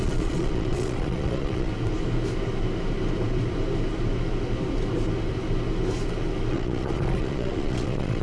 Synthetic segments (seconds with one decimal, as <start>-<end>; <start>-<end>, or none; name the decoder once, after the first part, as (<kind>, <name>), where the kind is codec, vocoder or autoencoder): 0.0-1.7 (vocoder, Vocos); 6.5-8.2

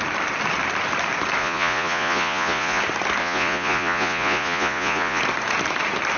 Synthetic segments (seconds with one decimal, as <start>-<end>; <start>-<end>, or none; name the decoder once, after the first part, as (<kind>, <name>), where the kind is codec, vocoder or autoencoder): 1.4-2.8 (vocoder, Vocos); 3.2-5.2

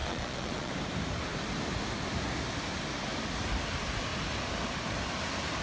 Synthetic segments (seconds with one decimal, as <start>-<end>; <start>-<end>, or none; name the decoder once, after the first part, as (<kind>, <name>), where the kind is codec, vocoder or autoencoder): 0.0-0.7 (vocoder, Vocos)